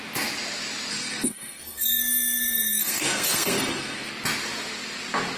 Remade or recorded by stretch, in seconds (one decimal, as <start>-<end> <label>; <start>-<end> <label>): 0.0-0.9 recorded; 0.9-4.1 remade; 4.1-5.4 recorded